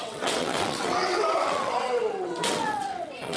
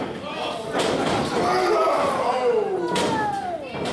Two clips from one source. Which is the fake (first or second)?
first